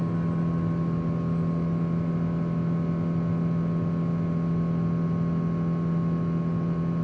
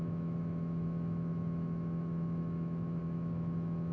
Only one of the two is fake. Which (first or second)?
second